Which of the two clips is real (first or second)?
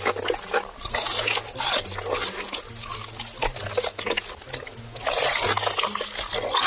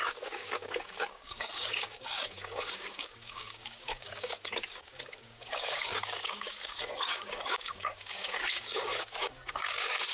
first